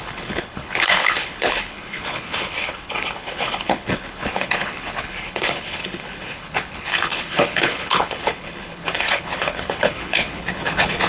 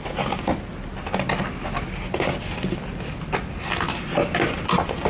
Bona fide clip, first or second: second